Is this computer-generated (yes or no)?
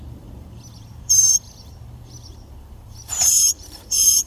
yes